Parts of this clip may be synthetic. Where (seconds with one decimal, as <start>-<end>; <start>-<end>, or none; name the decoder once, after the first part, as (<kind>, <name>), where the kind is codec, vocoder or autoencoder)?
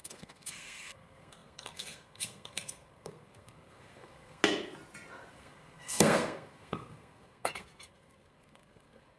0.0-4.4 (codec, SNAC); 5.3-9.2